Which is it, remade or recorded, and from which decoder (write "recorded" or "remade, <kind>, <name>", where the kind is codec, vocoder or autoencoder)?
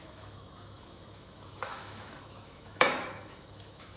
remade, autoencoder, DAC-VAE